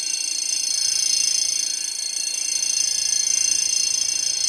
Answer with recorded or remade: recorded